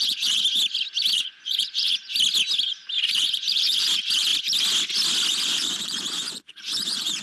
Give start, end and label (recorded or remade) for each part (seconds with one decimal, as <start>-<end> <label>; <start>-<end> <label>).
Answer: 0.0-0.4 remade; 0.4-1.1 recorded; 1.1-2.0 remade; 2.0-3.1 recorded; 3.1-4.3 remade; 4.3-5.3 recorded; 5.3-7.2 remade